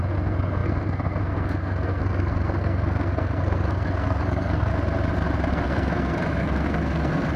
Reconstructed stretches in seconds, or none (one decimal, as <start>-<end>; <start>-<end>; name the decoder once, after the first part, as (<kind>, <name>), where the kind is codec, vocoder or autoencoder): 0.0-4.7 (codec, SNAC); 5.5-7.4